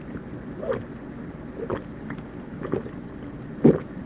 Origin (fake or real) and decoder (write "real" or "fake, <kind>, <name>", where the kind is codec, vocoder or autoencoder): real